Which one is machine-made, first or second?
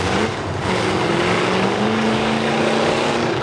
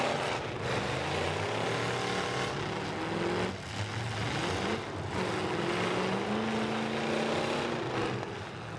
first